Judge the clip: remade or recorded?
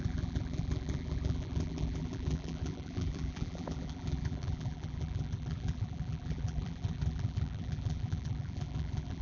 remade